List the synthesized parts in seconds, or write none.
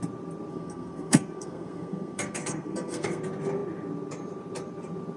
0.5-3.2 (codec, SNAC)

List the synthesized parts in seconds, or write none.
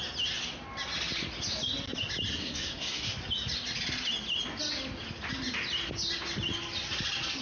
2.3-3.1 (codec, SNAC)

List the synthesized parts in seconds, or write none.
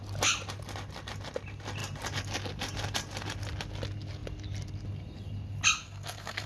5.8-6.5 (codec, SNAC)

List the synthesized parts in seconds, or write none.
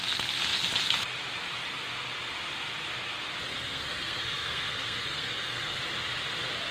3.5-5.8 (codec, SNAC)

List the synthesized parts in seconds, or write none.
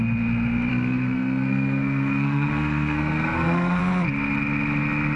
0.7-3.8 (codec, SNAC)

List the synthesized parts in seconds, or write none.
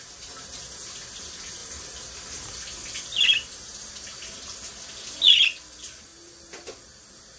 none